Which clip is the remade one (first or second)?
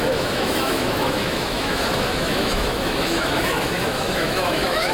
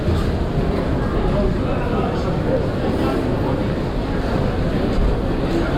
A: first